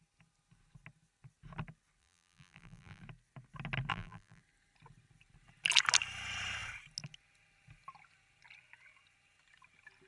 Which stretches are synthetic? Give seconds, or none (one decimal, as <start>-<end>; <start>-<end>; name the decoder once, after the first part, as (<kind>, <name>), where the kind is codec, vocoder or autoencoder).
2.0-3.0 (vocoder, BigVGAN v2); 3.9-4.4